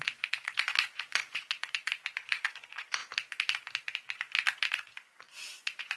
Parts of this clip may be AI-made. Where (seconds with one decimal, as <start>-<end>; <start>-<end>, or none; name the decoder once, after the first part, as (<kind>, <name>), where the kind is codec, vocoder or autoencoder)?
0.0-3.0 (vocoder, Vocos); 4.7-6.0